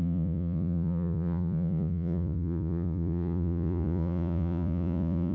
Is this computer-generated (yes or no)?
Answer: yes